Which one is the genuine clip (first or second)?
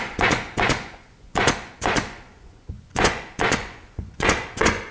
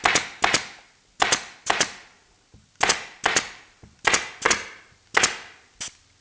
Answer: second